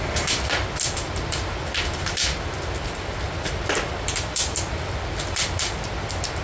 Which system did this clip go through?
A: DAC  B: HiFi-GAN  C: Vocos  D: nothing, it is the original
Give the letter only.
D